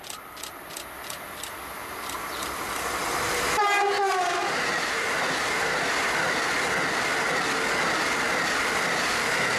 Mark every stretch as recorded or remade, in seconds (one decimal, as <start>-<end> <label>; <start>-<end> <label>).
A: 0.0-9.6 recorded